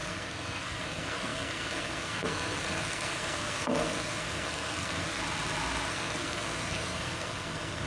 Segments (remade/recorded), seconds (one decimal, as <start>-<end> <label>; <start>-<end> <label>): 0.0-5.2 remade; 5.2-5.9 recorded; 5.9-7.9 remade

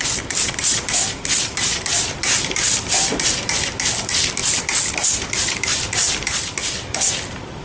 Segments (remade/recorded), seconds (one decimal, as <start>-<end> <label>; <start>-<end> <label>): 0.0-7.6 recorded

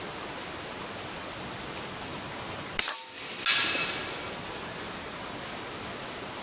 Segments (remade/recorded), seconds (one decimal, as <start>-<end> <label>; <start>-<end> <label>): 0.0-6.4 recorded

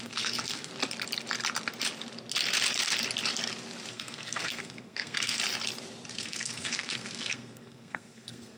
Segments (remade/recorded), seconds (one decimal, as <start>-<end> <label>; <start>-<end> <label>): 0.0-0.7 remade; 0.7-3.9 recorded; 3.9-5.4 remade; 5.4-6.1 recorded; 6.1-8.6 remade

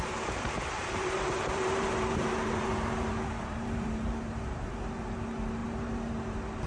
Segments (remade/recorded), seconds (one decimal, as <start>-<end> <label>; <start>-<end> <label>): 0.0-6.7 remade

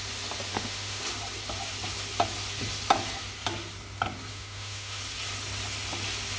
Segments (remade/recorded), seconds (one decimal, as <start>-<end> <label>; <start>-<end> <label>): 0.0-0.5 recorded; 0.5-1.0 remade; 1.0-4.3 recorded; 4.3-5.0 remade; 5.0-6.4 recorded

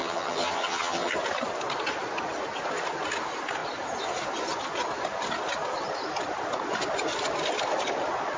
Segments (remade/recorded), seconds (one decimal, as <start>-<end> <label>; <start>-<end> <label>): 0.0-1.1 remade; 1.1-8.4 recorded

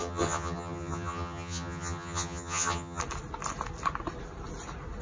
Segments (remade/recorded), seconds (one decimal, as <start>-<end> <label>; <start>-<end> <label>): 0.0-3.0 remade; 3.0-5.0 recorded